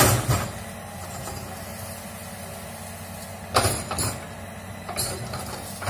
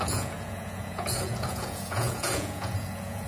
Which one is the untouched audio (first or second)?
first